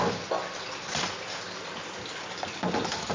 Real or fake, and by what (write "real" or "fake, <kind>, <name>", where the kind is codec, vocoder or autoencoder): real